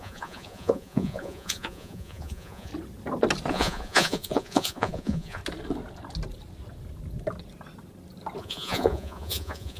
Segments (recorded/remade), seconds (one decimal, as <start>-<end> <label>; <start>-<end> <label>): 0.0-2.7 remade; 2.7-3.5 recorded; 3.5-5.4 remade; 5.4-8.4 recorded; 8.4-9.8 remade